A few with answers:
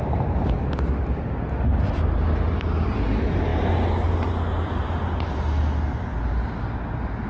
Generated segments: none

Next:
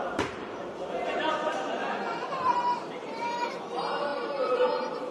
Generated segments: 0.0-1.8 (vocoder, BigVGAN v2); 2.9-5.1

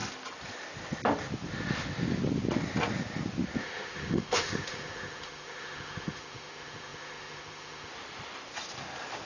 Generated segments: 3.6-7.9 (autoencoder, DAC-VAE)

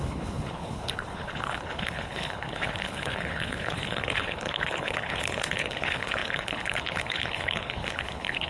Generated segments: 0.0-8.5 (codec, HILCodec)